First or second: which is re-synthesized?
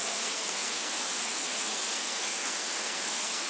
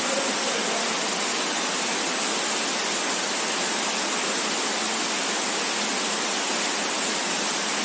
first